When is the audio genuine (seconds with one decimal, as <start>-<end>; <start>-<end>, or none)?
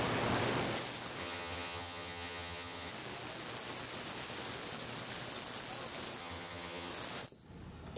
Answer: 0.0-1.2; 2.9-6.2; 6.9-8.0